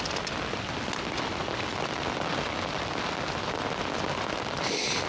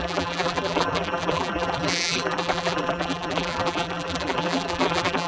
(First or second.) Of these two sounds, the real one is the first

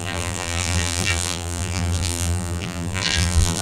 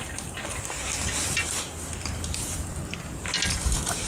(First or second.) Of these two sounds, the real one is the second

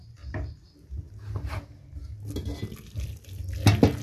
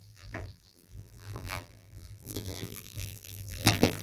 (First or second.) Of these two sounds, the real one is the first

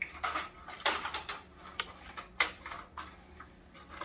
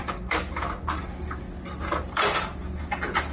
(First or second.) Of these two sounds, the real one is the second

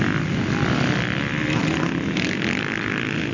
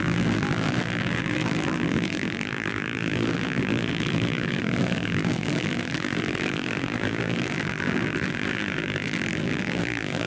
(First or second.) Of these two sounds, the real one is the first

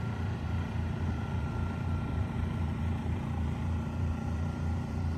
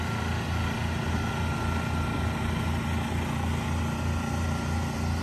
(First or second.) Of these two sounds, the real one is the second